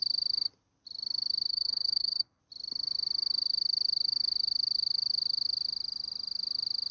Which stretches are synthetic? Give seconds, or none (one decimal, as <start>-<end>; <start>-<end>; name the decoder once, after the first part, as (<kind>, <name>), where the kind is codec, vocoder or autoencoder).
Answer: 1.5-2.4 (codec, HILCodec)